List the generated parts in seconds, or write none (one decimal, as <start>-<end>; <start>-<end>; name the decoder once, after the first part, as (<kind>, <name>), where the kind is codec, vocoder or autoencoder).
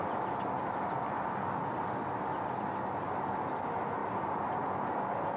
4.0-5.0 (vocoder, BigVGAN v2)